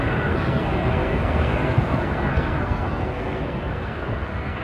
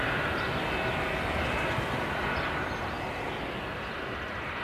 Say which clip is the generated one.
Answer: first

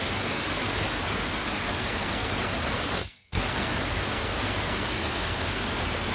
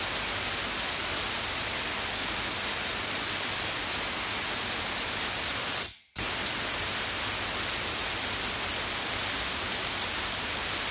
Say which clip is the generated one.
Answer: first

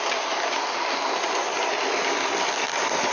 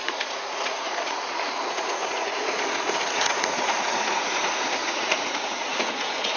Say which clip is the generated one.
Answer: second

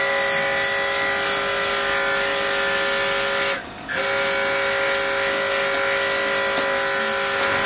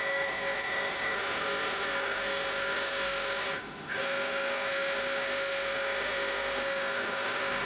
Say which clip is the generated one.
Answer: second